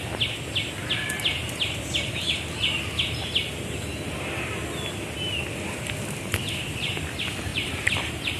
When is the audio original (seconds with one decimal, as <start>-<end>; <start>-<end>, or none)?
0.0-1.4; 2.6-7.5